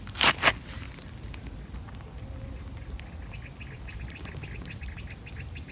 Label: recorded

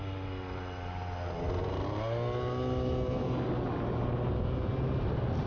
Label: recorded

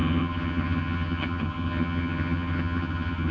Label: remade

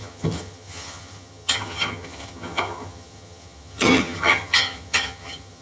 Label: remade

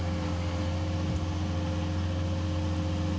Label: recorded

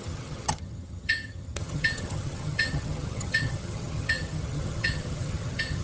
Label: remade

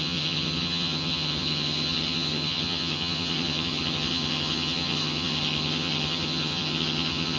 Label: remade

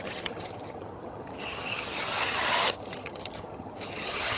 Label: remade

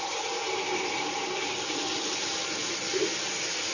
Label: recorded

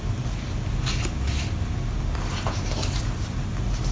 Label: recorded